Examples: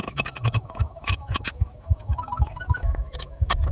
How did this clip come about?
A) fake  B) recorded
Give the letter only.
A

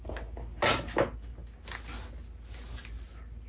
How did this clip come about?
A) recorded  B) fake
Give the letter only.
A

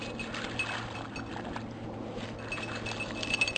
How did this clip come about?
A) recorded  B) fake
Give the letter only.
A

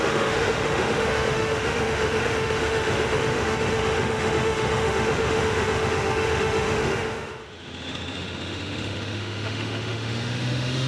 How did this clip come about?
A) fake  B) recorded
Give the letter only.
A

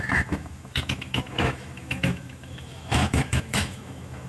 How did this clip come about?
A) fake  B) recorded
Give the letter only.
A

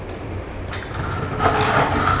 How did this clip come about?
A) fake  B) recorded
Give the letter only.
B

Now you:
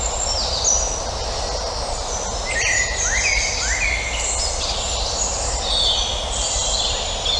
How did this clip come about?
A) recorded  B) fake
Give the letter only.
A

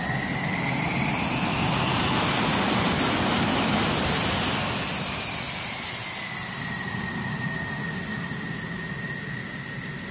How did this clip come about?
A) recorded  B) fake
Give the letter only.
A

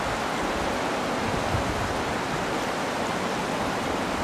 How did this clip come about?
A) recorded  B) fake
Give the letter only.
A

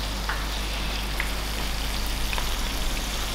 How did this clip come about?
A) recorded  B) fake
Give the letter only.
A